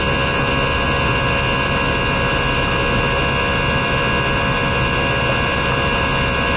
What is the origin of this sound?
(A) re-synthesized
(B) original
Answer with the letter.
B